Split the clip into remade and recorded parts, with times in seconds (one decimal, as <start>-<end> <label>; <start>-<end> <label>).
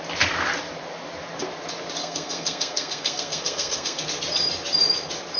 0.0-2.0 recorded; 2.0-4.0 remade; 4.0-5.4 recorded